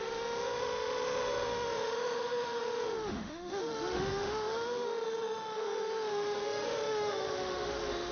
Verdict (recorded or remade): remade